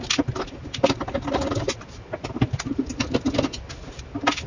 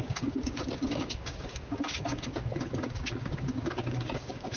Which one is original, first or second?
first